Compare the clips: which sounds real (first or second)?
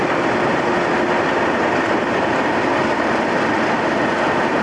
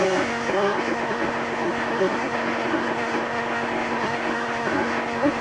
first